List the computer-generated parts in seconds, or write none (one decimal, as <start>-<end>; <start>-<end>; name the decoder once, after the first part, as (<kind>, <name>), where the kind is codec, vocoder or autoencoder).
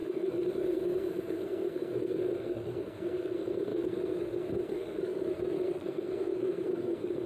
0.0-7.3 (codec, SNAC)